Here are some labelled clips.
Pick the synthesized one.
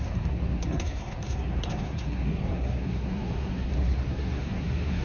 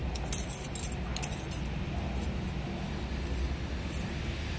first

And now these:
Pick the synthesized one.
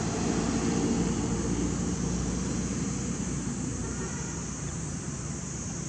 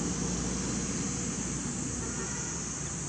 first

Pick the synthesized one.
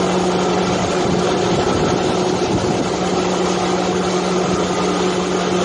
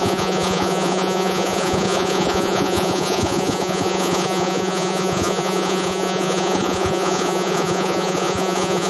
second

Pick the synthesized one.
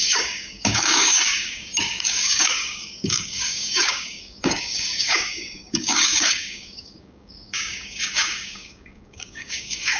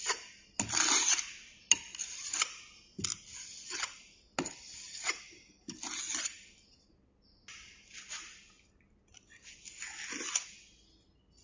first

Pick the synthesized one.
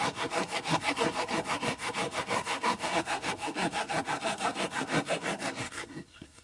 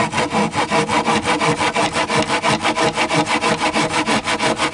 first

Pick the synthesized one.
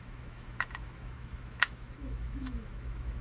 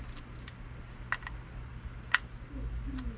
first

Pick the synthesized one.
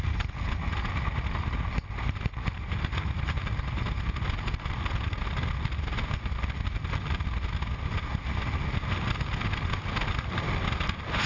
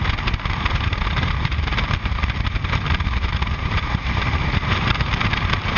second